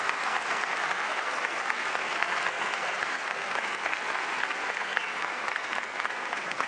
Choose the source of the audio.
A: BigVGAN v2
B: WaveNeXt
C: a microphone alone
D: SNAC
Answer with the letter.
D